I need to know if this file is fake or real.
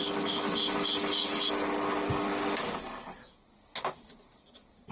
real